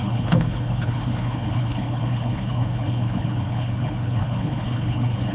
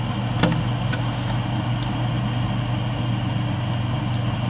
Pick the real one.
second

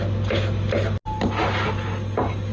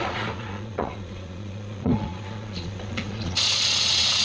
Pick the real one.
first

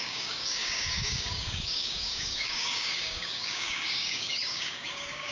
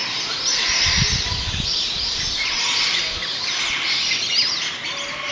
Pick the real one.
second